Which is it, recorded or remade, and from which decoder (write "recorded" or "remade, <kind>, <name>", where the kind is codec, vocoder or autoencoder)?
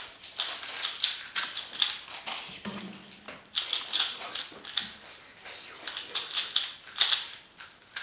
recorded